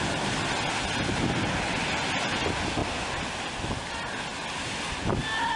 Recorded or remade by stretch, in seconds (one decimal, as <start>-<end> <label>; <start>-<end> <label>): 0.0-5.6 recorded